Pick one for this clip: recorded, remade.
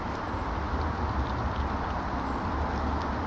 remade